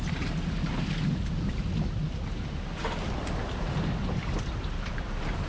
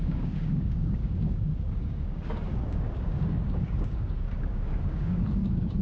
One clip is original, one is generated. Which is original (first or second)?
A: first